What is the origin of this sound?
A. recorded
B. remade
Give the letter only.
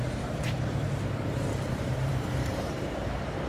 B